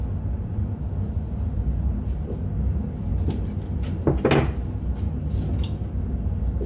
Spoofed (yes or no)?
no